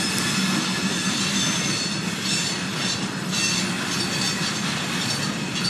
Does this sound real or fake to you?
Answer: real